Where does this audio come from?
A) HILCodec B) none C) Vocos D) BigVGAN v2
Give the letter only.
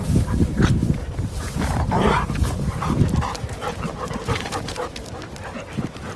D